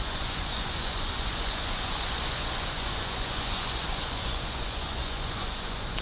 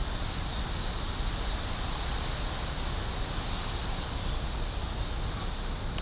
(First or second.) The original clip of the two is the second